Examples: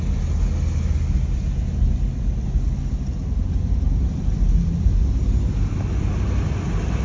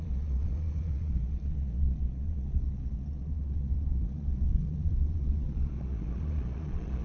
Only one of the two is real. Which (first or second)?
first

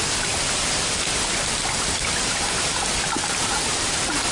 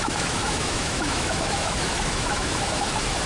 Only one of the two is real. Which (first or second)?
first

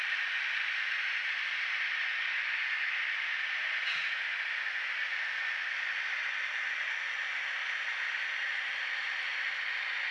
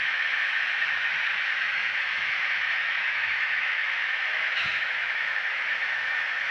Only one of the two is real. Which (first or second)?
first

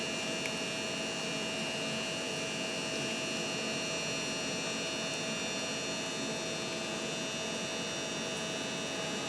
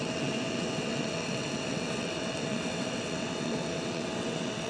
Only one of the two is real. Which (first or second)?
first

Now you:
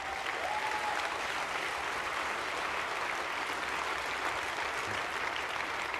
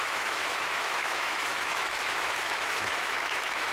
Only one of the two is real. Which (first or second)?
first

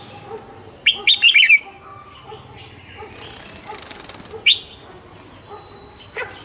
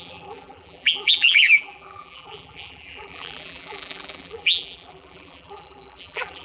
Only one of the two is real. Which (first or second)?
first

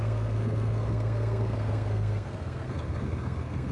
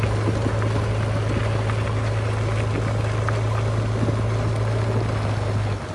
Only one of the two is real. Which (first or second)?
second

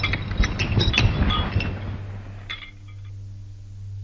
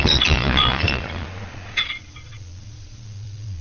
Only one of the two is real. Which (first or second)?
first